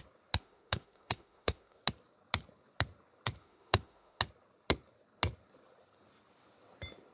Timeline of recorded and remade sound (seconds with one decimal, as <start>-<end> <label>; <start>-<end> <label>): 0.0-0.4 recorded; 0.4-1.8 remade; 1.8-3.4 recorded; 3.4-4.2 remade; 4.2-7.1 recorded